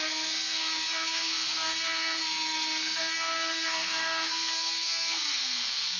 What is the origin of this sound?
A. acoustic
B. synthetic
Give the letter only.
B